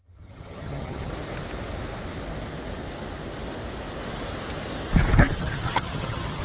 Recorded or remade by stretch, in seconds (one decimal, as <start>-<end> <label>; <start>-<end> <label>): 0.0-1.1 remade; 1.1-5.4 recorded; 5.4-6.4 remade